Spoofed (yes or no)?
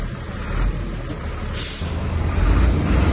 no